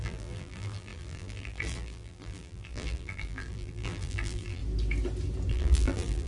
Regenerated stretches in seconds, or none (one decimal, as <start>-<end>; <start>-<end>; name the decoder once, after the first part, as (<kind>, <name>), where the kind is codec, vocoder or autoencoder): 0.0-4.6 (vocoder, BigVGAN v2); 5.5-6.3